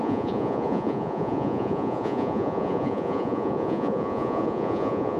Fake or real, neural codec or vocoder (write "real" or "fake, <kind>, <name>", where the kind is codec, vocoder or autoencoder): fake, vocoder, Vocos